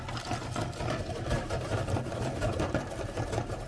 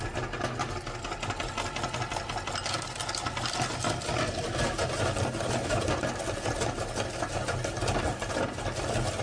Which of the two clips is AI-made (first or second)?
first